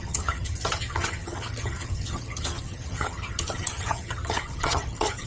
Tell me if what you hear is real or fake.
fake